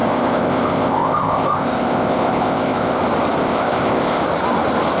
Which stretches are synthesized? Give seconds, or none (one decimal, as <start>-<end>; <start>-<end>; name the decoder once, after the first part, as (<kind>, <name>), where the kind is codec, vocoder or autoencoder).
0.0-3.0 (codec, ZipCodec); 3.4-4.2